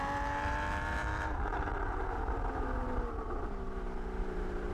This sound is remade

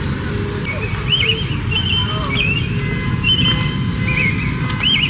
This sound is recorded